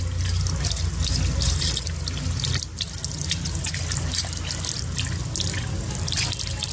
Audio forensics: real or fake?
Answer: real